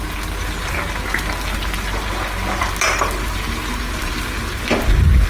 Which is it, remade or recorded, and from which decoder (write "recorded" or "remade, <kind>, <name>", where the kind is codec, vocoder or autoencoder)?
recorded